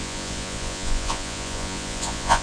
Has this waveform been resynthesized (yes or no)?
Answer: yes